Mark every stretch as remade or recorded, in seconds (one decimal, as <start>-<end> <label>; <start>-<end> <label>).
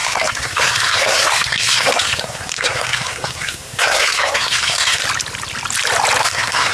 0.0-5.0 remade; 5.0-6.2 recorded; 6.2-6.7 remade